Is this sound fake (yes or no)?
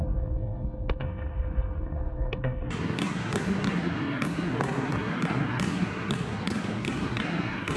yes